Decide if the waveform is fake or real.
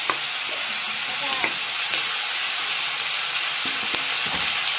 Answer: real